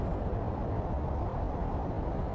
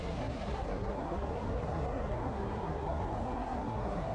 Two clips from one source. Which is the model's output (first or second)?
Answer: second